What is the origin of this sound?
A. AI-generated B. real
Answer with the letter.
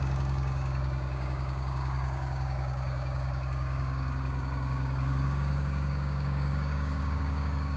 A